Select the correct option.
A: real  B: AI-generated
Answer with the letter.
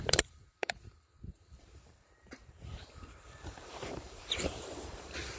B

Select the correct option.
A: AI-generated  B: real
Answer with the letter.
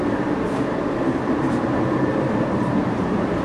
A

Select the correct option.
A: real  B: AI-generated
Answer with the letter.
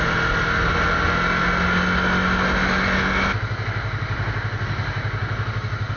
A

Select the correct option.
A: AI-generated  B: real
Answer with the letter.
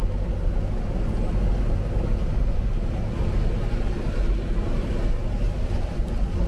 B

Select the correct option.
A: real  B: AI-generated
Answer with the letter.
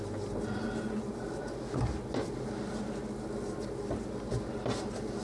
A